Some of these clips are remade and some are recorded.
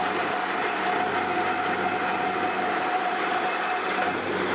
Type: recorded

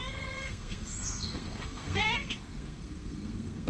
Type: remade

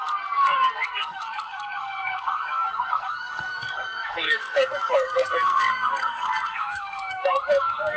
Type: remade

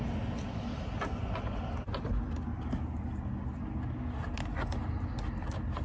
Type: recorded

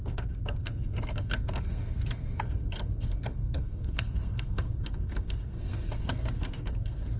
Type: remade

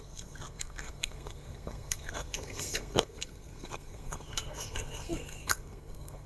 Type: remade